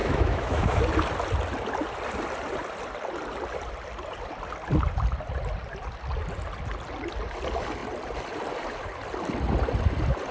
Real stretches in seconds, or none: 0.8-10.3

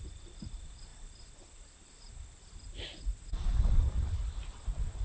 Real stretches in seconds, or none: 0.9-3.9

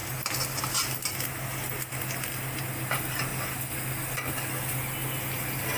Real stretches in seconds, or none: 0.0-5.8

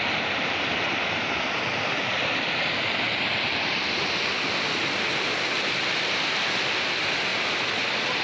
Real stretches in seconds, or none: 0.0-8.2

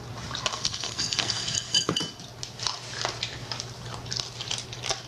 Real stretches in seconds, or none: 0.0-0.5; 2.0-5.1